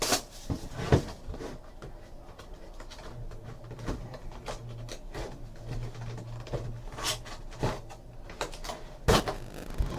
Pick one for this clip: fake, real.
real